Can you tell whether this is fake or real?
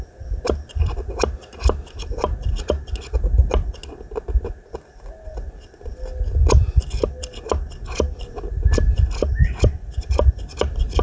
real